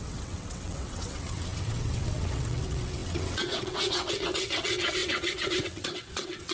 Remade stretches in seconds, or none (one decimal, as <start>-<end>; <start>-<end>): 0.0-6.5

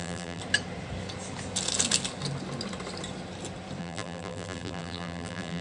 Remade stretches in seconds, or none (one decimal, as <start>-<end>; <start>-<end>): 0.0-0.4; 3.8-5.6

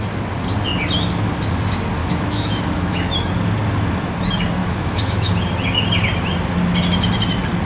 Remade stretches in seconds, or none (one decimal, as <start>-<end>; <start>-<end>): 2.0-3.3; 4.6-5.3

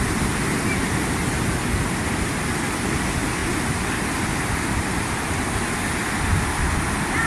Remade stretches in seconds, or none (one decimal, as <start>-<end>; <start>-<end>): none